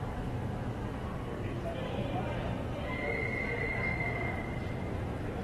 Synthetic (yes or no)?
yes